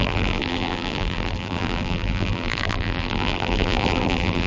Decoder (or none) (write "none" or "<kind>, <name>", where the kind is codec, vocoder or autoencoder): vocoder, BigVGAN v2